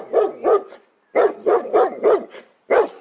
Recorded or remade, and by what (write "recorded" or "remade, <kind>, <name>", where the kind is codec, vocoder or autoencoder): recorded